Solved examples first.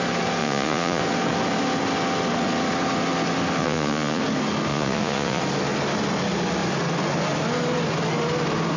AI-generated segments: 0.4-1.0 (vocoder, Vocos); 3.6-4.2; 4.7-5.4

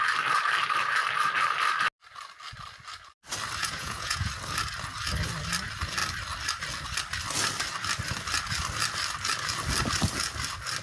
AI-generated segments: 3.6-4.3 (vocoder, Vocos)

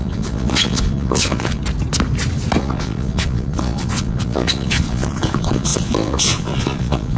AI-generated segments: 0.0-1.6 (vocoder, Vocos); 2.6-7.2

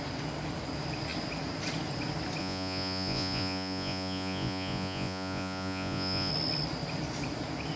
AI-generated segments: 2.4-6.3 (vocoder, Vocos)